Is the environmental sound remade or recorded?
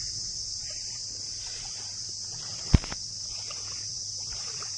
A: recorded